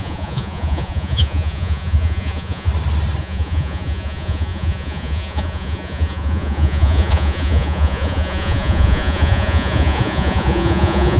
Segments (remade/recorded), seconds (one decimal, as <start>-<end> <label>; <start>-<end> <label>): 0.0-2.7 remade; 2.7-3.2 recorded; 3.2-11.2 remade